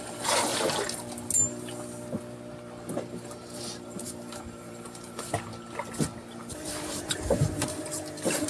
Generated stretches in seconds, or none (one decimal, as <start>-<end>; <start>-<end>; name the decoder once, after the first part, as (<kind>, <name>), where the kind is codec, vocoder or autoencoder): 0.0-0.5 (vocoder, BigVGAN v2); 3.1-5.5; 6.4-8.5